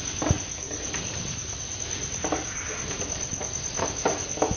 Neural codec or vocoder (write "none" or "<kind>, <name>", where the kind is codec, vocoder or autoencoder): none